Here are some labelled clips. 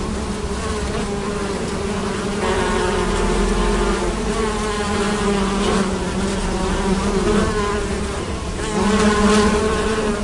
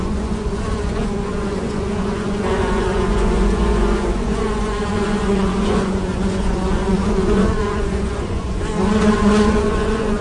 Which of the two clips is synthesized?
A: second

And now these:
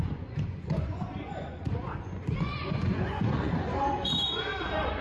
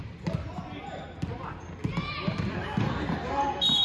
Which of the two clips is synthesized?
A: first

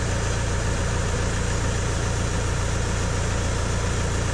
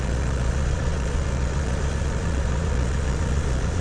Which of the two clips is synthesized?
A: second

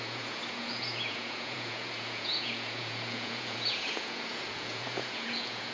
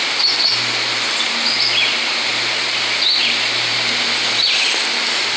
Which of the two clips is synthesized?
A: first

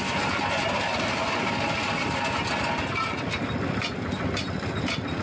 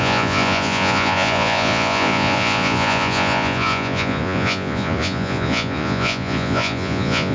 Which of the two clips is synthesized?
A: second